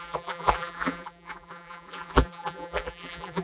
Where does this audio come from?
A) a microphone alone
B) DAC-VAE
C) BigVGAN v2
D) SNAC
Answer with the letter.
C